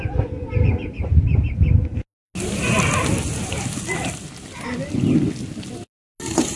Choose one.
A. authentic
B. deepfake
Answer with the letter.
A